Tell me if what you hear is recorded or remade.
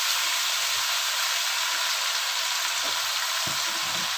recorded